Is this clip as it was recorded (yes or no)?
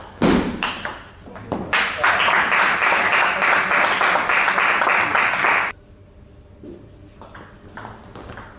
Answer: yes